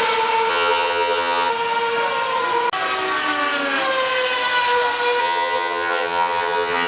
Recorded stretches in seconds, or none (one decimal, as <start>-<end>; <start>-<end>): 0.0-0.5; 1.5-5.2